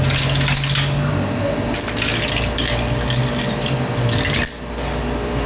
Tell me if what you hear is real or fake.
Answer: real